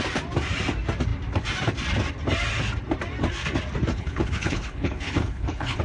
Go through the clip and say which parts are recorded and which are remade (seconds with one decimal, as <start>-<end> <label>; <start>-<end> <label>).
0.0-3.9 recorded; 3.9-5.8 remade